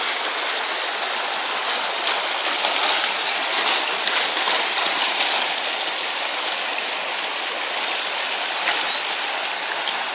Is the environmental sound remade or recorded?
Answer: recorded